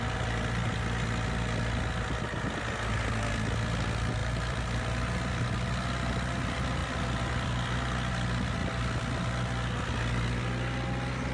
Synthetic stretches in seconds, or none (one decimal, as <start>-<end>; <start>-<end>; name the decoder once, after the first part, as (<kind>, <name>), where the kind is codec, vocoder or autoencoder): 4.2-5.4 (vocoder, BigVGAN v2); 8.6-9.8